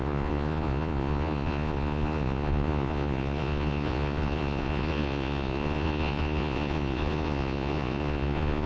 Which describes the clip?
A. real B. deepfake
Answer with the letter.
B